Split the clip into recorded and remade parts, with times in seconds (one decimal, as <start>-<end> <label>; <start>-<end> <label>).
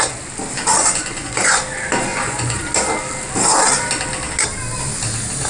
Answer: 0.0-0.8 recorded; 0.8-1.6 remade; 1.6-2.1 recorded; 2.1-2.6 remade; 2.6-5.5 recorded